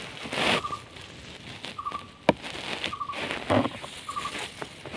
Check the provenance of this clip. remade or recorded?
recorded